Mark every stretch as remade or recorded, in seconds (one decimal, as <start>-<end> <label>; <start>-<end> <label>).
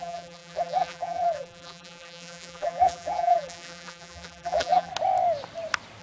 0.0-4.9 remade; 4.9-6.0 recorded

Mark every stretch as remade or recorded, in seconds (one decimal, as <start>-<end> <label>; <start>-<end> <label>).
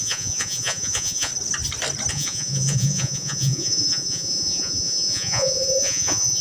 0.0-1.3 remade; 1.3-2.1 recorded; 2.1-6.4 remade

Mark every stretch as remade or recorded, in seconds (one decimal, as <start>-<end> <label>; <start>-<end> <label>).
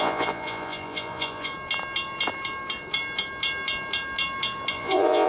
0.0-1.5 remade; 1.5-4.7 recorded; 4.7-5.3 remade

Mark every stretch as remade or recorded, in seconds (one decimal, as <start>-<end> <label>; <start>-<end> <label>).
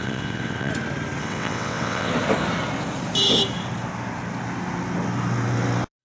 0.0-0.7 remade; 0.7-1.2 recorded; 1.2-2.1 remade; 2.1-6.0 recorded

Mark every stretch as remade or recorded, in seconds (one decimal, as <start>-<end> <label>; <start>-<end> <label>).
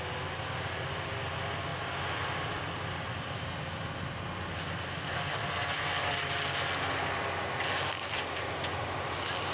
0.0-9.5 recorded